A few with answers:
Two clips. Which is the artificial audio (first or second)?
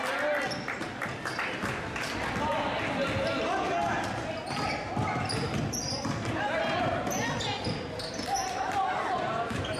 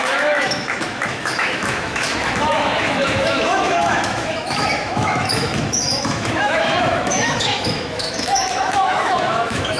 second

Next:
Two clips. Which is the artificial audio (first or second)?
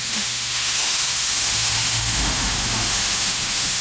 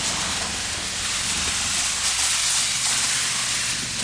first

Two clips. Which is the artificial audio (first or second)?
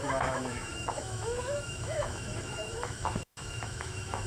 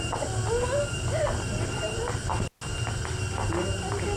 first